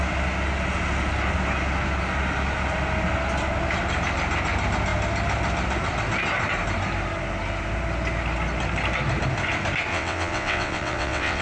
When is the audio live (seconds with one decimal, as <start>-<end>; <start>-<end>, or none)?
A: 0.0-9.9